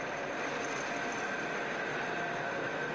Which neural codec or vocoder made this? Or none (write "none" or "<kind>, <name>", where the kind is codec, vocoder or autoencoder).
none